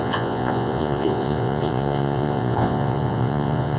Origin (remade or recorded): remade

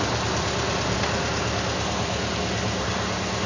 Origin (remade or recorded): recorded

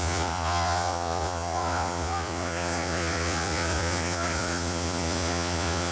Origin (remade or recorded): remade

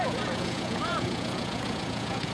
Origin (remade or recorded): remade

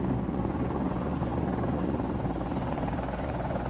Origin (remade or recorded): remade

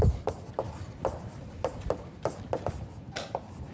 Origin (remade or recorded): recorded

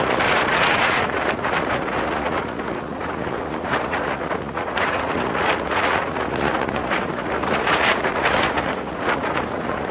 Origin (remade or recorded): remade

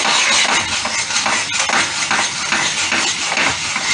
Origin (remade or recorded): recorded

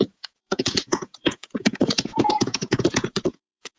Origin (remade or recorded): remade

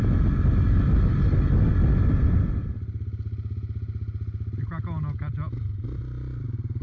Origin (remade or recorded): recorded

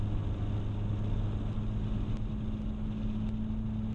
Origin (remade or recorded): recorded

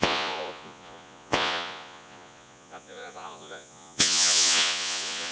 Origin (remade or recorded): remade